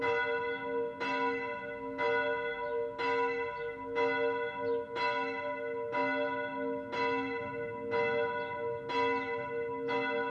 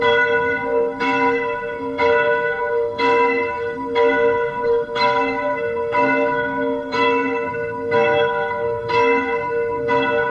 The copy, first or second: second